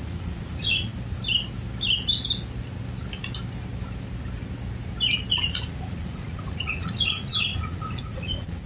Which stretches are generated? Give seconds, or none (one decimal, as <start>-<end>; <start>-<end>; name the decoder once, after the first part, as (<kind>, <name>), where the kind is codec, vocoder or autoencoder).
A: 0.0-0.9 (vocoder, Vocos); 5.3-8.7